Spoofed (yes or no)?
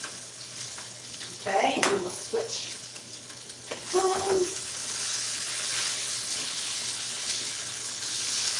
yes